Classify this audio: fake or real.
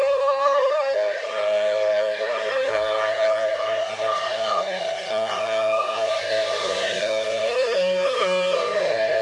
fake